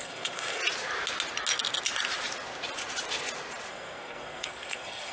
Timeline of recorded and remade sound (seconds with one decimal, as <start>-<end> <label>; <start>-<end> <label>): 0.0-0.6 remade; 0.6-3.7 recorded; 3.7-5.1 remade